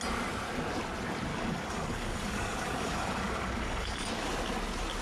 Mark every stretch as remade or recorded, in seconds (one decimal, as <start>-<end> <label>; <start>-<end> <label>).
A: 0.0-1.3 recorded; 1.3-4.3 remade; 4.3-5.0 recorded